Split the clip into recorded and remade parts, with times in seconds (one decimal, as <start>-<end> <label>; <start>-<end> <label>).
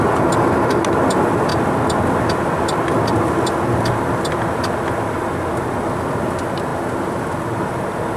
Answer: 0.0-8.2 recorded